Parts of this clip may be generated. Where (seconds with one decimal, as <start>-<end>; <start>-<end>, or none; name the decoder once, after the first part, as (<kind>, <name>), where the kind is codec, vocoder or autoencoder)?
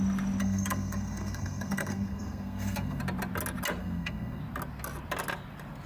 0.4-3.0 (codec, SNAC); 3.8-4.4